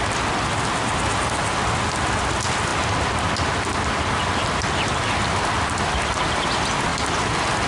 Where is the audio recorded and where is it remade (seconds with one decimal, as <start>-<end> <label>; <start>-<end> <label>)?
0.0-7.7 recorded